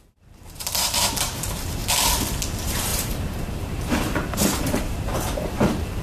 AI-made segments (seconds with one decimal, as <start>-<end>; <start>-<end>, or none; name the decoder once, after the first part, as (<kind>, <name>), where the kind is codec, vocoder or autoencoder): 0.0-1.8 (vocoder, BigVGAN v2); 2.5-6.0